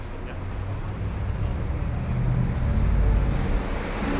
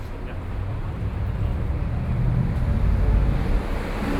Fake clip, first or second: second